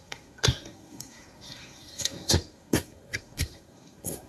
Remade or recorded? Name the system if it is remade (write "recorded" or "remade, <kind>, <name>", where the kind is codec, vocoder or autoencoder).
remade, codec, SNAC